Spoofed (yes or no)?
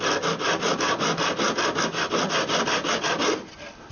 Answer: no